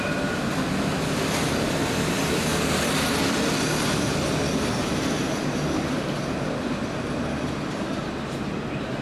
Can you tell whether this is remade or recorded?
recorded